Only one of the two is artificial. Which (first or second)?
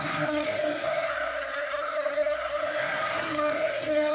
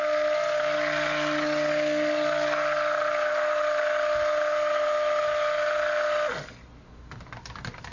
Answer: first